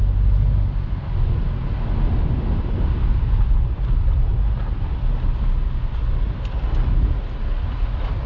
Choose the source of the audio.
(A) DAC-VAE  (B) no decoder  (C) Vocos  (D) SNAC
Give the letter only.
B